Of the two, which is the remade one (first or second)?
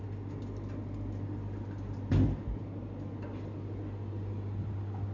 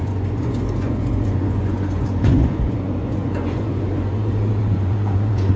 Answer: second